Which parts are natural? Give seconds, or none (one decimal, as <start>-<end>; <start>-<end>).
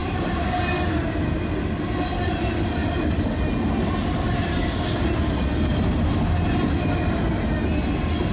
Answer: 0.6-2.8; 3.5-8.3